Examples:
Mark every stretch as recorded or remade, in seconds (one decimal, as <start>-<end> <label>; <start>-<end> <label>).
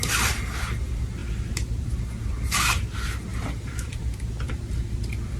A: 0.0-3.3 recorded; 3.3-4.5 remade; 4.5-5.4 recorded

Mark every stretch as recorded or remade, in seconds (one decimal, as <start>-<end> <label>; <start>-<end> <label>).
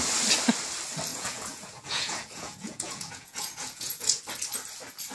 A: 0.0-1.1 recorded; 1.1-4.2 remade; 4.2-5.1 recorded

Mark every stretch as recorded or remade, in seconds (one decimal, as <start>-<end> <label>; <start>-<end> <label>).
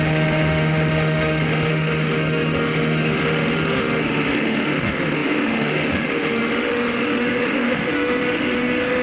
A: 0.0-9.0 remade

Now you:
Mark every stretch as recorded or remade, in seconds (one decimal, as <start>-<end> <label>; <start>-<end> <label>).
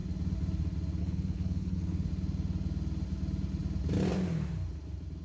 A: 0.0-1.0 recorded; 1.0-2.1 remade; 2.1-5.2 recorded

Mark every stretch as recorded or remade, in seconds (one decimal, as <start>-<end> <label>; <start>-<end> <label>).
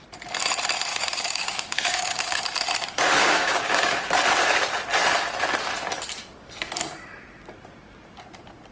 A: 0.0-0.9 recorded; 0.9-2.4 remade; 2.4-3.2 recorded; 3.2-4.0 remade; 4.0-8.7 recorded